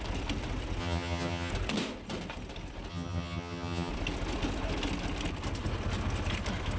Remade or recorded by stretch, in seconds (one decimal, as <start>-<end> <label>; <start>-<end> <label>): 0.0-0.8 recorded; 0.8-1.5 remade; 1.5-2.9 recorded; 2.9-3.9 remade; 3.9-6.8 recorded